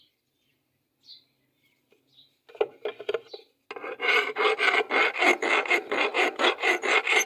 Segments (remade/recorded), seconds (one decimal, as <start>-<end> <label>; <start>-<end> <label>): 0.0-6.1 recorded; 6.1-6.8 remade; 6.8-7.3 recorded